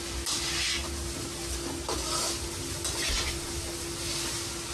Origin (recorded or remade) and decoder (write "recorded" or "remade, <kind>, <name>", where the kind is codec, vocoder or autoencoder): recorded